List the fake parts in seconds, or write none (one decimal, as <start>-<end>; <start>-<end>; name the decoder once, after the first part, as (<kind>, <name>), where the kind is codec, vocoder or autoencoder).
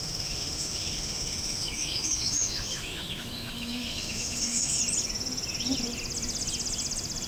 0.0-4.8 (autoencoder, DAC-VAE)